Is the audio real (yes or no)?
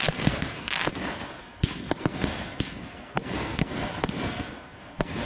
no